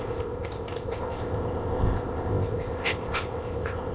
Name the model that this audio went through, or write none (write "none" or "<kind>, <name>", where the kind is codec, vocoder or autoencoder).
codec, ZipCodec